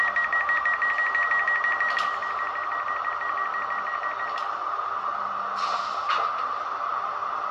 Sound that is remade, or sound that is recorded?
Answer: recorded